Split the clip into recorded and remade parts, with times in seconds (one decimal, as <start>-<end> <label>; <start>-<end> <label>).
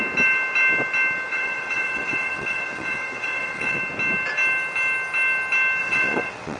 0.0-1.3 recorded; 1.3-3.8 remade; 3.8-5.8 recorded; 5.8-6.6 remade